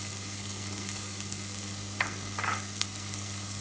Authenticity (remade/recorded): remade